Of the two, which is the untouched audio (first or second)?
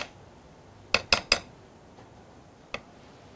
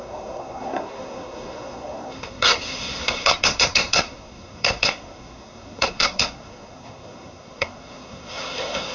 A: first